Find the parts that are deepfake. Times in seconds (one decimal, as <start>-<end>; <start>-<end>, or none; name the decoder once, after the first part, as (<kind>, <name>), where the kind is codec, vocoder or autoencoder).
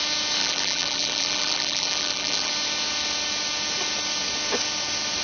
0.4-2.5 (vocoder, BigVGAN v2)